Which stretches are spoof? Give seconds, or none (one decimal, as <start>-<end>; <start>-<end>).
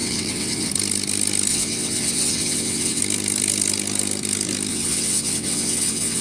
0.0-0.7; 1.5-3.0; 4.7-6.2